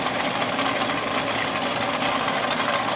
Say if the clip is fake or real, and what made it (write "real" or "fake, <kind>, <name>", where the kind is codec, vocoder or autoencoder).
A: real